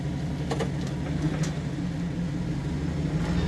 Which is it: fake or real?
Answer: real